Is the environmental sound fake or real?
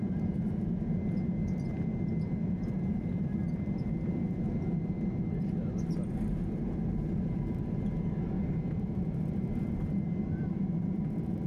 fake